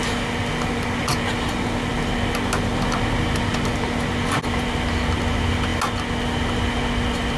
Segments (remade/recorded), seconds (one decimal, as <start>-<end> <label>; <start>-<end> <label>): 0.0-7.4 recorded